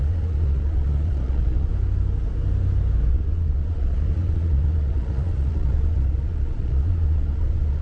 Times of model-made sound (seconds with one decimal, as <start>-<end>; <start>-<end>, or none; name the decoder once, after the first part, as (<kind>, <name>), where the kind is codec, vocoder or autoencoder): 0.0-1.7 (vocoder, Vocos); 3.1-7.8